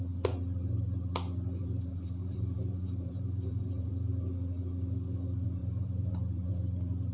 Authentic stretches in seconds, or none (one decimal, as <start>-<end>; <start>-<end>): 0.0-1.6; 3.9-5.6; 6.5-7.1